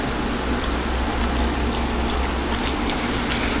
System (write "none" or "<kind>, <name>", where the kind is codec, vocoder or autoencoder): none